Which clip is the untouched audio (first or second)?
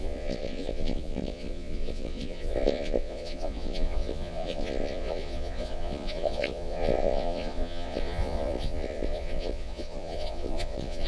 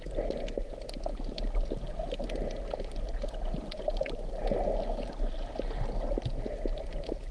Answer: second